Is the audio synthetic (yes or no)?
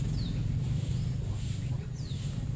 no